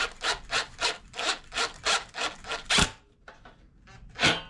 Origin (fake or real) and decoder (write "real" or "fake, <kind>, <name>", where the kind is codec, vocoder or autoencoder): real